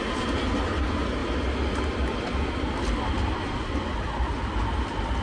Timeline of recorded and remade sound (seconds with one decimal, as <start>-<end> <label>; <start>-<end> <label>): 0.0-5.2 recorded